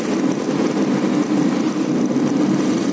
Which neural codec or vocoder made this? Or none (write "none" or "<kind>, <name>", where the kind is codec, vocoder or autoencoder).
none